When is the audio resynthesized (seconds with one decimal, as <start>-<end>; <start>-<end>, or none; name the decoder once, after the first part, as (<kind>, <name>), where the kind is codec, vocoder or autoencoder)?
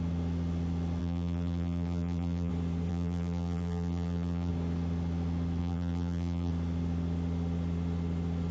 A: 1.0-2.5 (vocoder, BigVGAN v2); 2.9-4.5; 5.6-6.5